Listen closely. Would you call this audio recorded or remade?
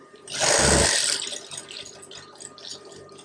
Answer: recorded